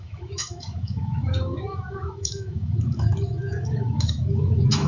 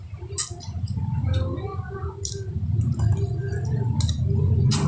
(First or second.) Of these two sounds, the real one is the second